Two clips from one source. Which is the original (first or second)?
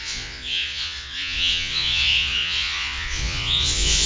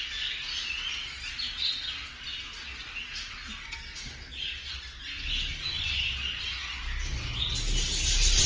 second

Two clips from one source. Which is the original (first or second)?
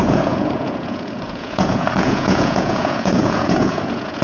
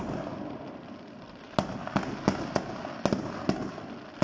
second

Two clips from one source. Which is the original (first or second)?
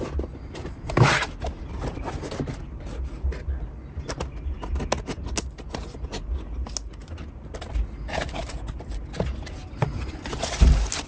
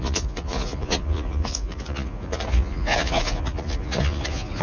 first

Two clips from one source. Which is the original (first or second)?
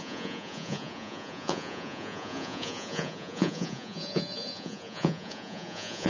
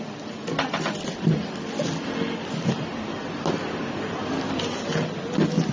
second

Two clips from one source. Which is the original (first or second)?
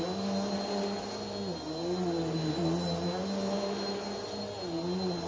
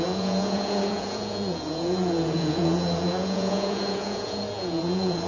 first